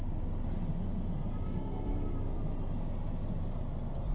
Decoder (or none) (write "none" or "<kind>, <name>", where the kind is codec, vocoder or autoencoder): none